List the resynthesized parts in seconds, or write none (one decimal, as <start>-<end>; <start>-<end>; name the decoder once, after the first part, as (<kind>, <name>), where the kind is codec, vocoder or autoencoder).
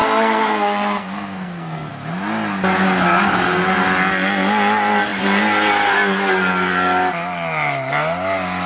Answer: 0.0-1.9 (codec, SNAC)